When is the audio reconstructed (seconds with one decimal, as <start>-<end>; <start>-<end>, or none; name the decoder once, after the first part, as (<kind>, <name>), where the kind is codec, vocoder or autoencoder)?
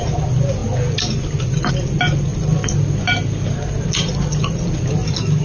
none